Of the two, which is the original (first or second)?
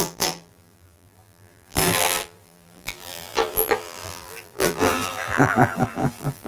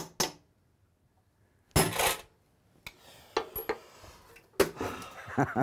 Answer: second